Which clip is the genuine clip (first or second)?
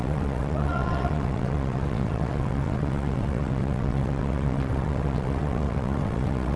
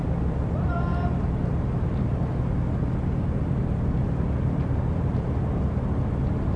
second